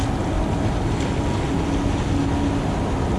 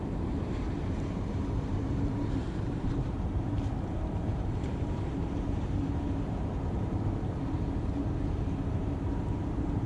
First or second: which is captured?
first